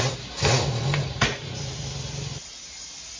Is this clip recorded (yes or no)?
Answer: yes